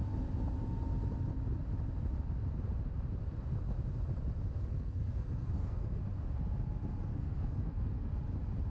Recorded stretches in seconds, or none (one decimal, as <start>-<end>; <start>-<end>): 0.0-4.6; 6.0-7.1; 8.1-8.7